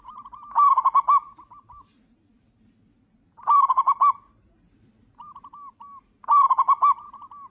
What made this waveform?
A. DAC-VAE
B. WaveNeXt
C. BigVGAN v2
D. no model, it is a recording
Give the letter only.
D